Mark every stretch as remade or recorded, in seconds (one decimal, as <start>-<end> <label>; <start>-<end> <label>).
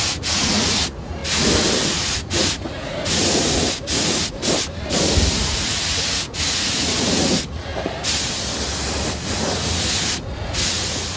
0.0-1.2 remade; 1.2-1.9 recorded; 1.9-4.4 remade; 4.4-5.3 recorded; 5.3-7.7 remade; 7.7-9.3 recorded; 9.3-11.2 remade